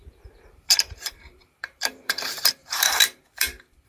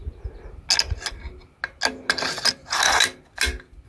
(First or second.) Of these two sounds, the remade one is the first